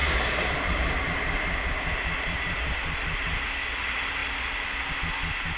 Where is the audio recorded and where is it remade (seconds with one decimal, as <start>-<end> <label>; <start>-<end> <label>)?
0.0-3.4 remade; 3.4-5.6 recorded